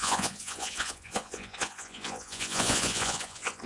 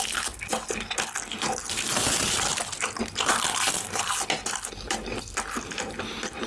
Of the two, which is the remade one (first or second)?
first